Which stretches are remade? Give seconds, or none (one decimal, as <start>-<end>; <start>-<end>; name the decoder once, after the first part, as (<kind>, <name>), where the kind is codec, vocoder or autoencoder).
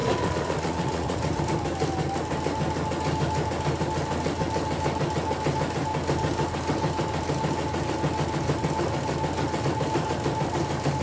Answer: 0.0-1.4 (vocoder, Vocos)